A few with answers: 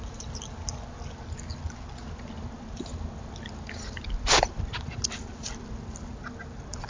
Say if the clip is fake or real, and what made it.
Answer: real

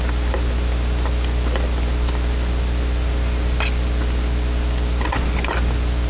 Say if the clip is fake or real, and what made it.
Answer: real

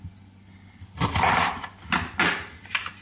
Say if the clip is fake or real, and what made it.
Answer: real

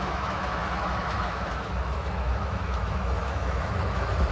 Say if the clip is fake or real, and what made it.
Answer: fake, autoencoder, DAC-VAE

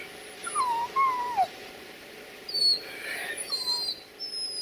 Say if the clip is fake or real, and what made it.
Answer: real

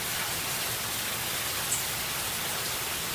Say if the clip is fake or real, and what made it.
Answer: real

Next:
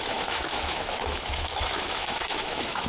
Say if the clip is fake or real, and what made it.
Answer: fake, autoencoder, DAC-VAE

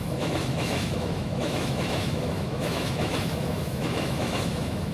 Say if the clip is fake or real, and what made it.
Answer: fake, autoencoder, DAC-VAE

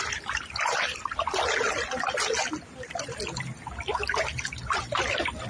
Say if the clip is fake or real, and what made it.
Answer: real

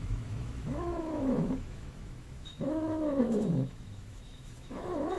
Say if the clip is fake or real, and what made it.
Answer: fake, autoencoder, DAC-VAE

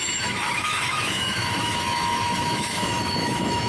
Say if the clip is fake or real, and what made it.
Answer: fake, autoencoder, DAC-VAE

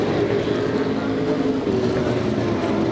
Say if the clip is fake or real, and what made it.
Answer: real